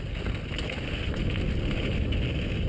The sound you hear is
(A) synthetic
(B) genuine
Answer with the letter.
B